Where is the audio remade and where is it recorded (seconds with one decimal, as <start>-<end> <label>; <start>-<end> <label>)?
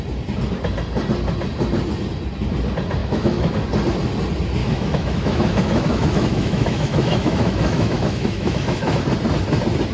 0.0-3.0 recorded; 3.0-3.5 remade; 3.5-4.6 recorded; 4.6-9.0 remade; 9.0-9.9 recorded